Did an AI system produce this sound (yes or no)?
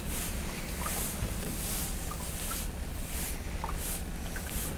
no